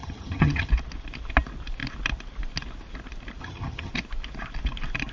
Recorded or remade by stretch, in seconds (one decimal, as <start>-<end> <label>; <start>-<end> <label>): 0.0-0.7 remade; 0.7-3.4 recorded; 3.4-3.9 remade; 3.9-5.1 recorded